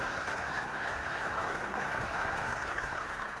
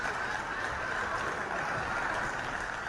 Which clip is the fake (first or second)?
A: first